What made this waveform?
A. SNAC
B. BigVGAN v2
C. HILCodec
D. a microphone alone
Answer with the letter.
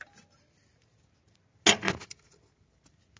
D